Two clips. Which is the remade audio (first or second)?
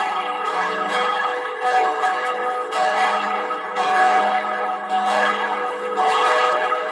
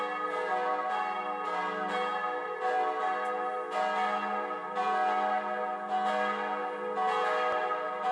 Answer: first